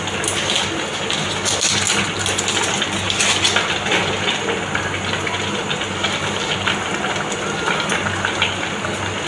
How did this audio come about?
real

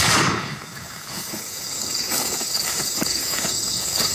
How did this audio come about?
fake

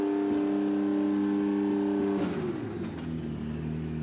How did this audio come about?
real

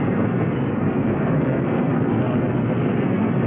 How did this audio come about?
fake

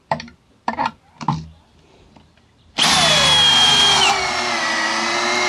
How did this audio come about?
fake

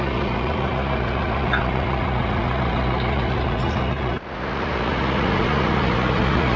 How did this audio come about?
fake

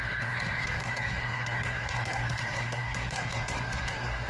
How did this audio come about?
fake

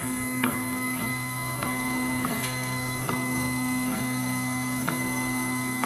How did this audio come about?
fake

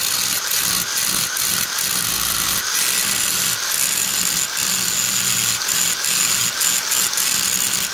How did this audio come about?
real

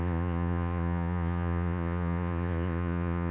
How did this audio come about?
fake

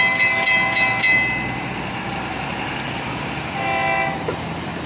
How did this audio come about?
real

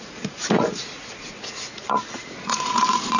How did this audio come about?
fake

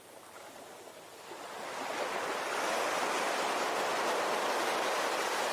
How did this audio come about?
real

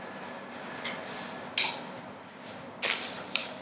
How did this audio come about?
real